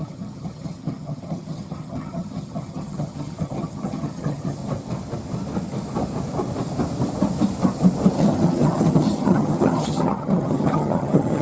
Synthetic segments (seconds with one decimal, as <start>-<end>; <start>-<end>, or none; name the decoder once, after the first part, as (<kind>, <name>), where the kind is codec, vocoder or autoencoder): 0.0-4.6 (vocoder, HiFi-GAN); 8.1-11.4